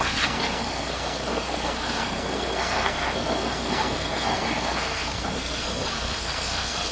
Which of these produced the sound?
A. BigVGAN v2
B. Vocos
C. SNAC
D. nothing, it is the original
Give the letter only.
C